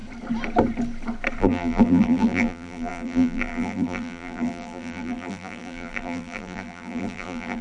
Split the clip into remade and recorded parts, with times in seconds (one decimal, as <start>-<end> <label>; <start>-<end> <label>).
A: 0.0-1.4 recorded; 1.4-7.6 remade